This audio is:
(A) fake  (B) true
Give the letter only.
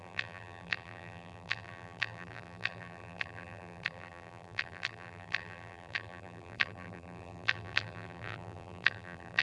A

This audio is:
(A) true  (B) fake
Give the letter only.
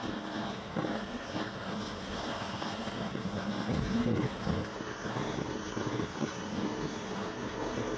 B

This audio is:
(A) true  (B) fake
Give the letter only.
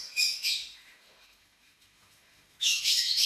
B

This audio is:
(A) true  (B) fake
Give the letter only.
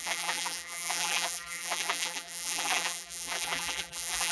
B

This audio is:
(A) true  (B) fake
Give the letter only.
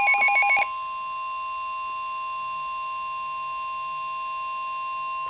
A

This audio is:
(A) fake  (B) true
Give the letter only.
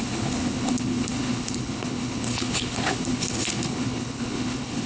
A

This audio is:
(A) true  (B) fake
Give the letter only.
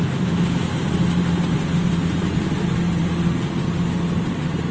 A